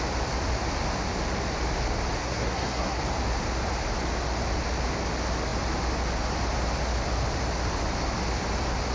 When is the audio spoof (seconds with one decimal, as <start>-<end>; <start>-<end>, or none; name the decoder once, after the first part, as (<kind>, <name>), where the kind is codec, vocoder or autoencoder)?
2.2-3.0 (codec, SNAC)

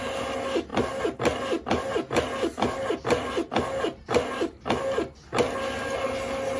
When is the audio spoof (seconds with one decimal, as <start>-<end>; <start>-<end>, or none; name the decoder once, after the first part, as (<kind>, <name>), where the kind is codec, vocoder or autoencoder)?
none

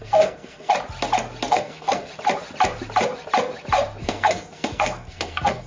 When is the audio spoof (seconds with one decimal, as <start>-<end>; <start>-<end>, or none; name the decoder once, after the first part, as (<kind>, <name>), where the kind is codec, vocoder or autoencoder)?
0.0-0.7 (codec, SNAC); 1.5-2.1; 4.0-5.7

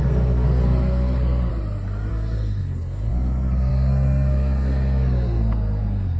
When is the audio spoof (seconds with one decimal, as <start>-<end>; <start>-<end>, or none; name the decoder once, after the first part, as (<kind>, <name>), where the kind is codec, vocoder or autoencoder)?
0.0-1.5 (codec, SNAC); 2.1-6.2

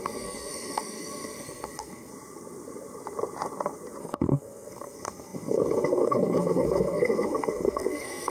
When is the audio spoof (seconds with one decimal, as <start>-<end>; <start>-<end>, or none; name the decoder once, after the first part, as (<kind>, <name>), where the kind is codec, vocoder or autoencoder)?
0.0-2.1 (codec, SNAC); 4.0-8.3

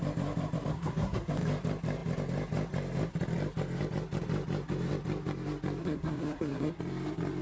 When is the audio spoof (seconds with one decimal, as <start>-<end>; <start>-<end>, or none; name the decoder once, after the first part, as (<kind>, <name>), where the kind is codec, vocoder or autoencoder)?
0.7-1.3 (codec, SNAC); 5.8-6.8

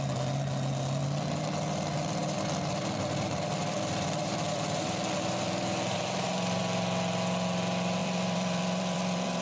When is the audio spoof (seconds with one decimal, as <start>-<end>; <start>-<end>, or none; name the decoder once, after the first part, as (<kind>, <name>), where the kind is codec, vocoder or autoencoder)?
2.2-6.6 (vocoder, BigVGAN v2); 8.0-9.4

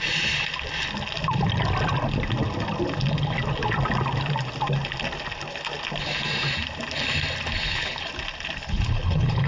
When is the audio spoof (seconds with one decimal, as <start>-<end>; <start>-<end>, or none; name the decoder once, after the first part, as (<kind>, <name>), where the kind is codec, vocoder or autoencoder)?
7.6-8.1 (codec, HILCodec); 8.6-9.5